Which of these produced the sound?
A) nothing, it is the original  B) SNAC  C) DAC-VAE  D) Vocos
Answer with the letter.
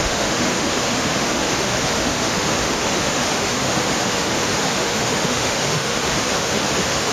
C